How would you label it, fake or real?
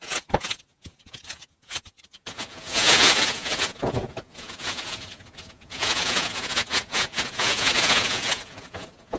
fake